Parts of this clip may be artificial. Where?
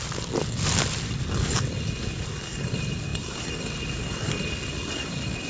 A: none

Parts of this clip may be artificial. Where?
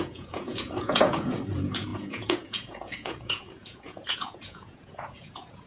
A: 0.0-5.7 (vocoder, Vocos)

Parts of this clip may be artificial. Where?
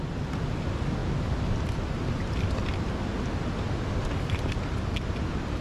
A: none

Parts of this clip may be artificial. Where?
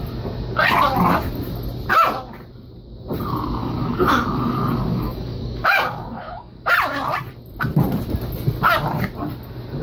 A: 3.6-6.7 (codec, DAC)